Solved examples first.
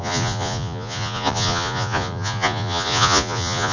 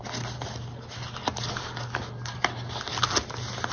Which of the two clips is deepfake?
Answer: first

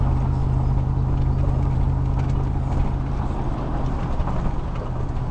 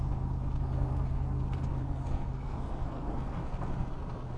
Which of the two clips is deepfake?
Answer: second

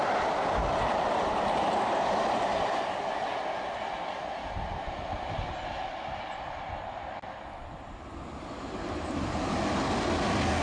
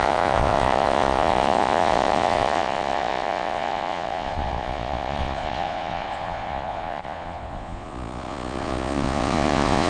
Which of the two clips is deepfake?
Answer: second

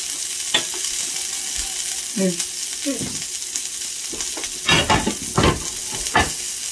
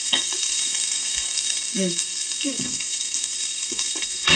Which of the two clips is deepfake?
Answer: second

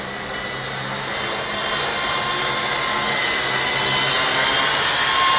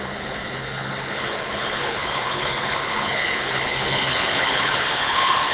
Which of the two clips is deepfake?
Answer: second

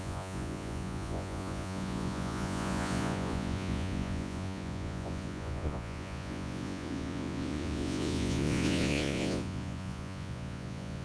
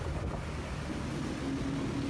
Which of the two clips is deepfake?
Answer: first